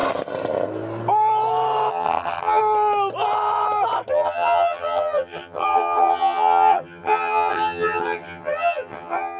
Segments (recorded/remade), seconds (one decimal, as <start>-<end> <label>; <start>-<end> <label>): 0.0-1.9 recorded; 1.9-2.6 remade; 2.6-4.1 recorded; 4.1-9.4 remade